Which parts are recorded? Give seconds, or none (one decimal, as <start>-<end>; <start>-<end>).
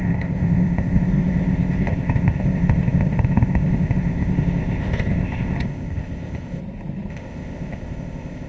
6.6-7.1